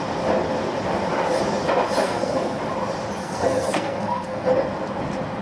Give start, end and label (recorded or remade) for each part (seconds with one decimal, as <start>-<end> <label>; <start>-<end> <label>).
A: 0.0-2.0 recorded; 2.0-2.6 remade; 2.6-3.2 recorded; 3.2-4.5 remade; 4.5-5.4 recorded